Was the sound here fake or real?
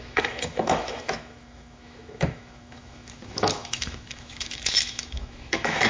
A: fake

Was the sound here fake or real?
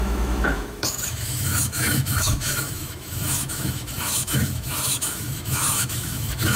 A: fake